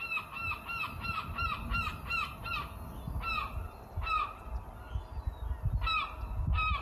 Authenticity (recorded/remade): recorded